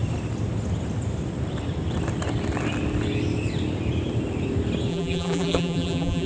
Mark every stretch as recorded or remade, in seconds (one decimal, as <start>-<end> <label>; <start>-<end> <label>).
0.0-4.9 recorded; 4.9-6.3 remade